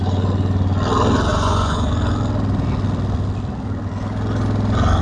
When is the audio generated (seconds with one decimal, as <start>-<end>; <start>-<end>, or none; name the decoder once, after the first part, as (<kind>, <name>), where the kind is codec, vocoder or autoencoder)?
1.3-1.9 (vocoder, Vocos)